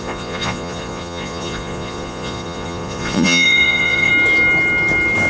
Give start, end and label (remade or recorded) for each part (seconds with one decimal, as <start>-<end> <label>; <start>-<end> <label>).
0.0-4.1 remade; 4.1-5.3 recorded